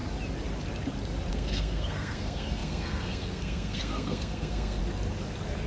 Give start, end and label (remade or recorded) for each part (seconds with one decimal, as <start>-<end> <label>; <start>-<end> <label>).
0.0-1.3 recorded; 1.3-4.8 remade; 4.8-5.7 recorded